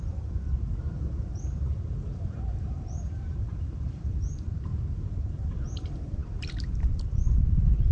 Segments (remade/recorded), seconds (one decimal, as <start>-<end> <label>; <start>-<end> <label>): 0.0-4.7 remade; 4.7-5.2 recorded; 5.2-7.9 remade